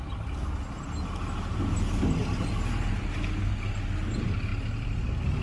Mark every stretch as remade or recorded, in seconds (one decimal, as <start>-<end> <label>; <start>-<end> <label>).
0.0-2.2 recorded; 2.2-2.9 remade; 2.9-4.5 recorded; 4.5-5.4 remade